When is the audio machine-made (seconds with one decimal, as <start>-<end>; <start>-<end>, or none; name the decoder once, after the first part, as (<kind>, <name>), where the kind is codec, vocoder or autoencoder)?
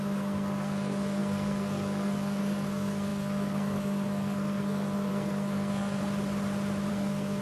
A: 0.0-6.0 (codec, SNAC); 6.9-7.4